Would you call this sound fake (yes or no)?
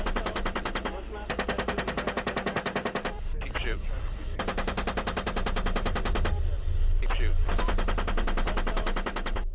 yes